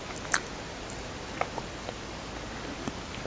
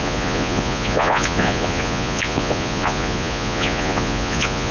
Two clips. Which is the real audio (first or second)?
first